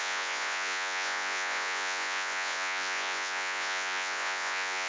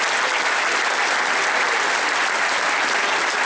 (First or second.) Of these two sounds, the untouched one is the second